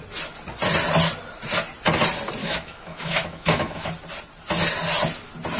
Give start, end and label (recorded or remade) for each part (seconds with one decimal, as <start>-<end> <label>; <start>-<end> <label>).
0.0-2.4 recorded; 2.4-3.9 remade; 3.9-5.6 recorded